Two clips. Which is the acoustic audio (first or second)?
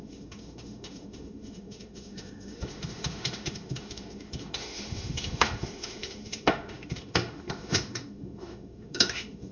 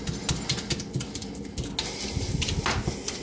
second